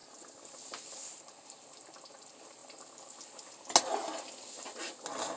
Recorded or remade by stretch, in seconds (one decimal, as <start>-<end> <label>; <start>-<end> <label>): 0.0-5.4 recorded